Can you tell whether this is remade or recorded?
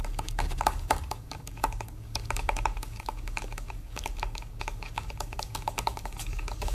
remade